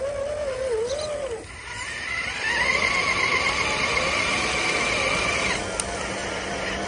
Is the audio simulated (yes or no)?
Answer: no